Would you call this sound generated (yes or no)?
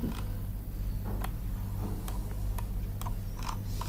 no